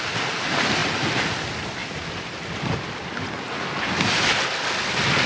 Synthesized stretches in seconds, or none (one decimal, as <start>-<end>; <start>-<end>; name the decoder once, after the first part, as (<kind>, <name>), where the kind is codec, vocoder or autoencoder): none